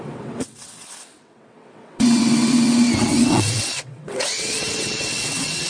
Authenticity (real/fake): fake